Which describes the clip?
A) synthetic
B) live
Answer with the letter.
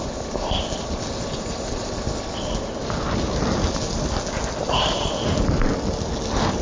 B